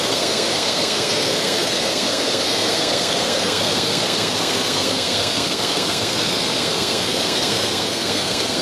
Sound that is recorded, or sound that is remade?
remade